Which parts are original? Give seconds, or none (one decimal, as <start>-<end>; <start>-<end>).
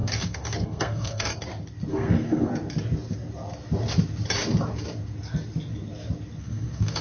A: 1.3-1.9; 2.5-6.4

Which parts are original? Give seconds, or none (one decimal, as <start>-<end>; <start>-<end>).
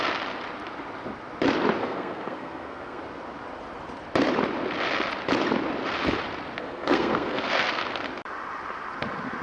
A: 0.0-1.8; 3.0-6.6; 7.8-9.4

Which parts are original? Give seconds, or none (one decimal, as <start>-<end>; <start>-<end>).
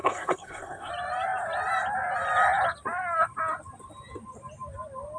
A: 0.9-5.2